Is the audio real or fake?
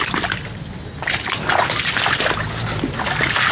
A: real